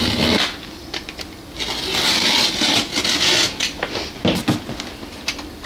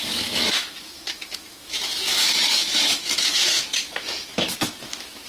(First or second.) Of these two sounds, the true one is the first